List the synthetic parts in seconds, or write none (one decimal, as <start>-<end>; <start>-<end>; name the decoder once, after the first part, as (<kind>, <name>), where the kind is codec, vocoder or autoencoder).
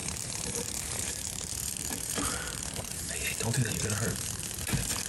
0.0-2.3 (vocoder, BigVGAN v2); 2.9-4.3